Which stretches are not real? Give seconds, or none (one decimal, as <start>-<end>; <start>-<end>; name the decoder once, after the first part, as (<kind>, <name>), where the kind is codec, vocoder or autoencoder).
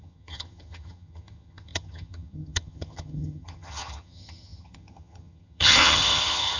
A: 0.0-6.6 (vocoder, HiFi-GAN)